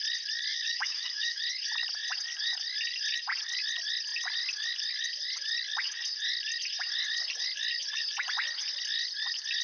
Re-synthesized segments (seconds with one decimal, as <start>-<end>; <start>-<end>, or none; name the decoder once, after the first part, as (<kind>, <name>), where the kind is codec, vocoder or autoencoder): 0.5-1.4 (autoencoder, DAC-VAE)